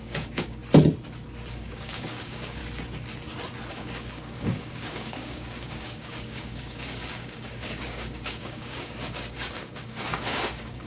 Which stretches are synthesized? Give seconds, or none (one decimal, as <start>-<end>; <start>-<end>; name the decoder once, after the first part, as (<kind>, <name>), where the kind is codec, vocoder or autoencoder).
0.0-0.6 (codec, DAC); 1.5-2.6; 3.7-10.9